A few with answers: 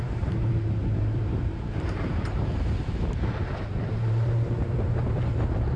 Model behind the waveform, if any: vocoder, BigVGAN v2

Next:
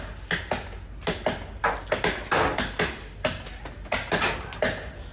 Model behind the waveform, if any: none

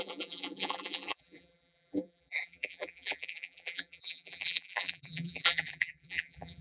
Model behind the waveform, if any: vocoder, BigVGAN v2